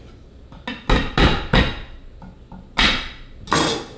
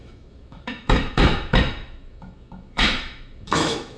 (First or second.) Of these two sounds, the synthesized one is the second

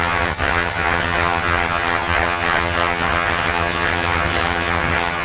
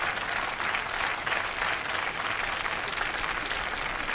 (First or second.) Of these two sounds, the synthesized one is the first